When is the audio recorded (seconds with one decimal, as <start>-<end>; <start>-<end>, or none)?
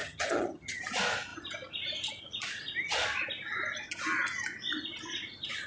0.8-5.7